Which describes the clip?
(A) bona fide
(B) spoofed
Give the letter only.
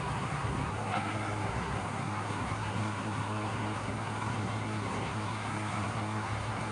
B